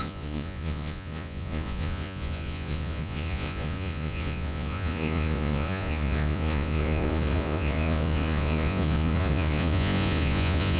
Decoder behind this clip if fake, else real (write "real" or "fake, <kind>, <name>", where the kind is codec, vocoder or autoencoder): fake, vocoder, Vocos